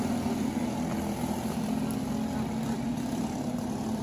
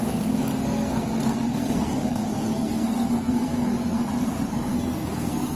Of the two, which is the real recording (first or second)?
first